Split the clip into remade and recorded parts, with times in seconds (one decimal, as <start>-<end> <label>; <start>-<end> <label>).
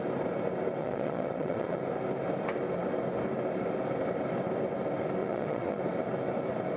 0.0-0.8 recorded; 0.8-1.8 remade; 1.8-5.2 recorded; 5.2-5.8 remade; 5.8-6.8 recorded